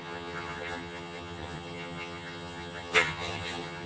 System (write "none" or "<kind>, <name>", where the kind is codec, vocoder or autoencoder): vocoder, HiFi-GAN